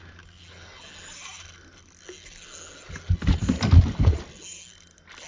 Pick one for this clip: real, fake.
real